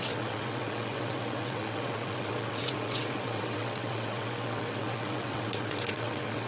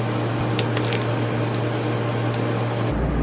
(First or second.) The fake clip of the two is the first